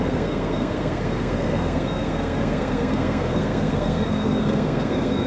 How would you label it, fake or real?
fake